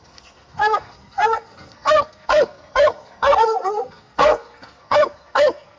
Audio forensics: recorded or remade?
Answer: remade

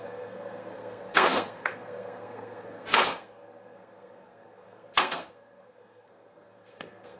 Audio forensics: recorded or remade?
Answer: remade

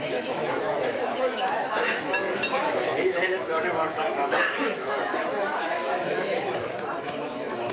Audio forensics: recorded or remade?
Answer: remade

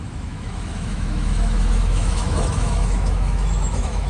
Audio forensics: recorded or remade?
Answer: remade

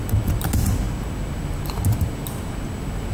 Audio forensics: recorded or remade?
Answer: recorded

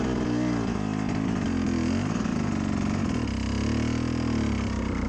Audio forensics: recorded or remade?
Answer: recorded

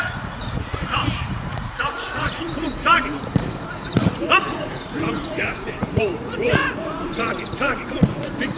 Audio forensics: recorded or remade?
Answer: remade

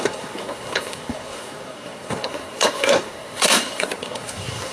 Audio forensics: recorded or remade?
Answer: remade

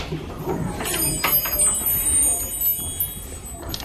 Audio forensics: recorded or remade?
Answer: recorded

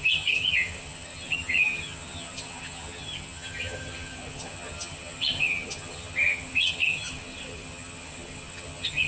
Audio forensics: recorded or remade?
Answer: remade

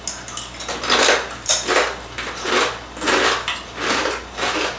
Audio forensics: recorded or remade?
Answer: recorded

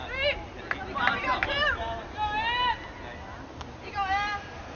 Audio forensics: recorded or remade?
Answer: recorded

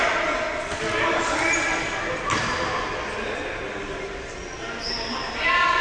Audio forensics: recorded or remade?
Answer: recorded